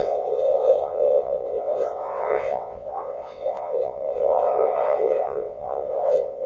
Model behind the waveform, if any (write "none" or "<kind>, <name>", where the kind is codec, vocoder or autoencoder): vocoder, WaveNeXt